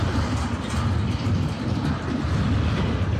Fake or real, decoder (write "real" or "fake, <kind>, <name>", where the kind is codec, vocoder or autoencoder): real